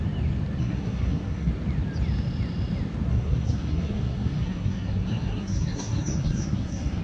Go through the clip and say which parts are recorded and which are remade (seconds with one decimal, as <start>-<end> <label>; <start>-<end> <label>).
0.0-0.6 recorded; 0.6-1.5 remade; 1.5-3.1 recorded; 3.1-7.0 remade